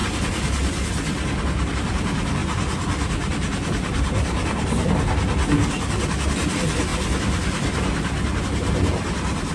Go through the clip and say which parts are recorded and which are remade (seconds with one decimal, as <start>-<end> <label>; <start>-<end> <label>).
0.0-2.4 recorded; 2.4-4.9 remade; 4.9-9.5 recorded